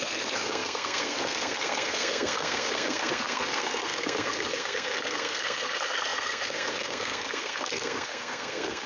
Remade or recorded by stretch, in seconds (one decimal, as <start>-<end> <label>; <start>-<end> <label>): 0.0-8.9 remade